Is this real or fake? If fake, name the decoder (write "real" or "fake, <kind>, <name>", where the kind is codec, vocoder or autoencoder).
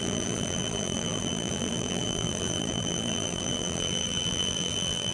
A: fake, vocoder, BigVGAN v2